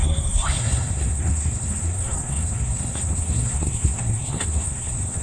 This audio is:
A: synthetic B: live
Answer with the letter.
A